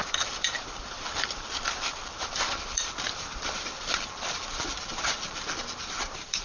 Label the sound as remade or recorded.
remade